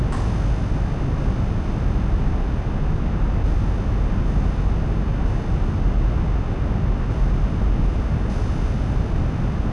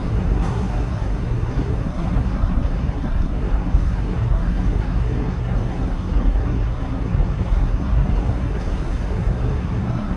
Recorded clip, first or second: first